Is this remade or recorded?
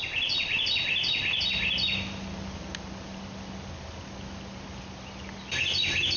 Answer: recorded